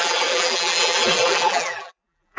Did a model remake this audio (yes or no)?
yes